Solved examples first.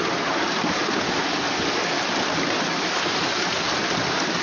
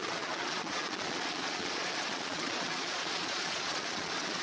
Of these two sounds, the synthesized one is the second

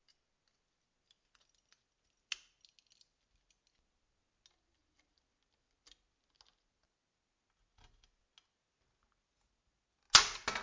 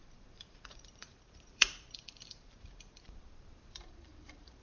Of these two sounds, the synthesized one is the second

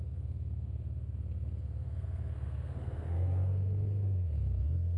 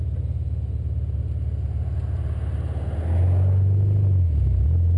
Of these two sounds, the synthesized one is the first